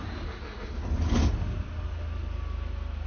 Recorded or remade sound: recorded